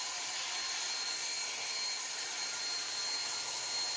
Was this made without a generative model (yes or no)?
yes